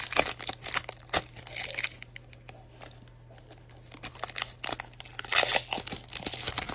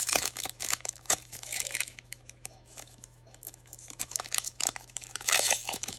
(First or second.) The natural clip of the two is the first